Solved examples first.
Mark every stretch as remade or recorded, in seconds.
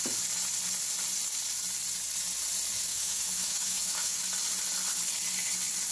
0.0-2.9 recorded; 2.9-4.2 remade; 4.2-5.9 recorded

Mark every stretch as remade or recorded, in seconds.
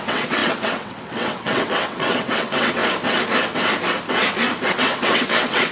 0.0-2.8 remade; 2.8-4.7 recorded; 4.7-5.7 remade